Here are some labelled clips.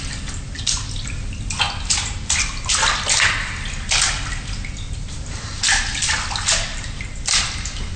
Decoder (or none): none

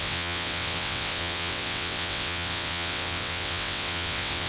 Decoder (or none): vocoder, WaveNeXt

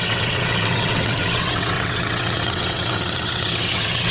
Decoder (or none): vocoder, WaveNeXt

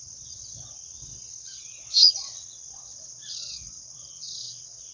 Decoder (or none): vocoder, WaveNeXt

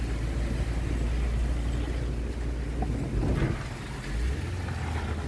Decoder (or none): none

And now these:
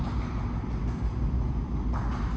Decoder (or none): none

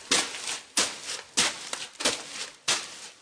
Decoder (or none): none